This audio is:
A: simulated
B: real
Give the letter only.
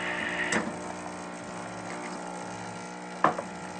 B